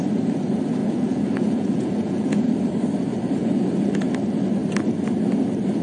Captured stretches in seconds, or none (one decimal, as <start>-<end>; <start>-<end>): 0.0-0.8; 2.5-3.4; 4.1-5.8